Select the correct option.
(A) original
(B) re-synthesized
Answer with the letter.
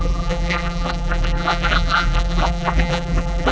B